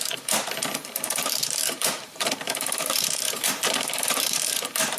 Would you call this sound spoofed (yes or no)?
yes